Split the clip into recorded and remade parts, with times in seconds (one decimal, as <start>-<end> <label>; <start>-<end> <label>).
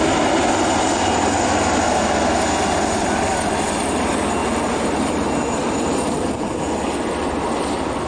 0.0-4.4 recorded; 4.4-6.6 remade; 6.6-8.1 recorded